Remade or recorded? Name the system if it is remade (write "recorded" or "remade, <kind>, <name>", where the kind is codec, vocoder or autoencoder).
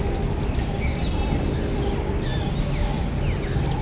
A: recorded